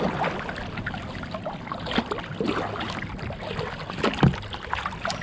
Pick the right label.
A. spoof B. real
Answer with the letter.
B